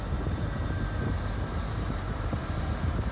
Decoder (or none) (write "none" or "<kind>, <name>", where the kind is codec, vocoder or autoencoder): vocoder, BigVGAN v2